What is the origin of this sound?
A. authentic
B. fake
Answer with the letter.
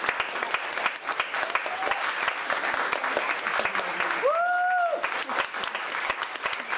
A